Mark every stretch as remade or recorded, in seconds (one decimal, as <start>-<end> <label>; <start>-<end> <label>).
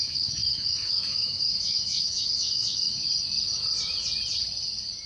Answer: 0.0-3.1 remade; 3.1-5.1 recorded